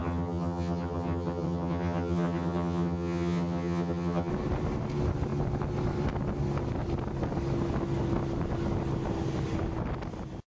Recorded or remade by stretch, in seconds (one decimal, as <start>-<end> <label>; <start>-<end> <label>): 0.0-4.3 remade; 4.3-10.5 recorded